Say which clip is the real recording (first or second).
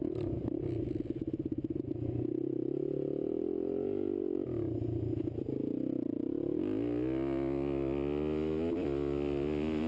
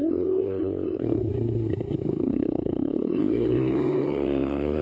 first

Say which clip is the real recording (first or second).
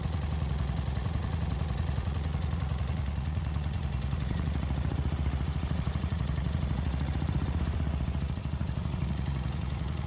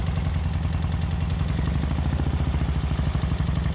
second